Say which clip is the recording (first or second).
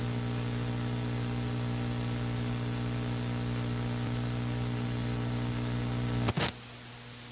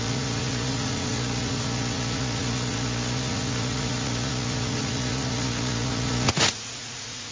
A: first